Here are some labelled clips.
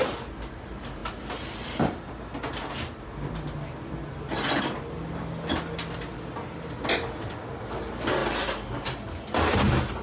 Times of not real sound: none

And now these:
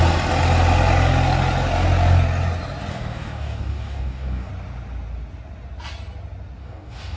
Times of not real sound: 2.9-4.5; 6.6-7.2

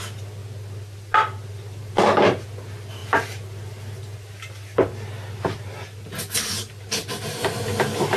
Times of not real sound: none

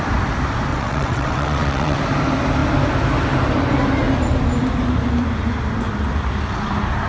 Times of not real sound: 0.7-2.0

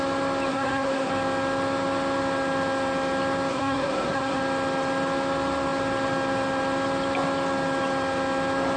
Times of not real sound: 0.5-1.1; 3.5-4.4

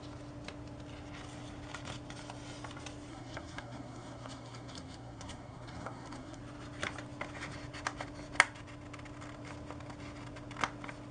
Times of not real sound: 3.1-6.4

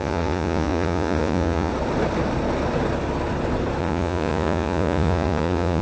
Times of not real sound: 0.0-1.7; 3.8-5.8